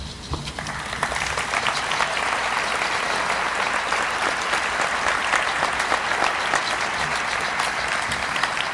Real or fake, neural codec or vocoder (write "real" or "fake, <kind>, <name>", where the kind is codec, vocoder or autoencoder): real